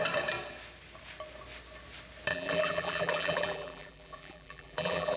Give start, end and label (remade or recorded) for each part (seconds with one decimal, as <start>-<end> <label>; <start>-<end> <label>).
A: 0.0-2.3 recorded; 2.3-5.2 remade